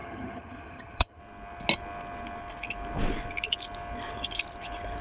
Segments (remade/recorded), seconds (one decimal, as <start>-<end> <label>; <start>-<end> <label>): 0.0-1.2 remade; 1.2-5.0 recorded